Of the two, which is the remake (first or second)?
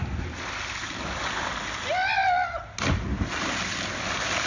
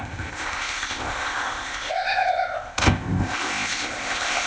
second